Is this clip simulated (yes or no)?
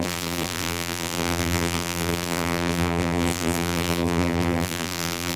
yes